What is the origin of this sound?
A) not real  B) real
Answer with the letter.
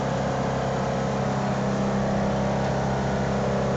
B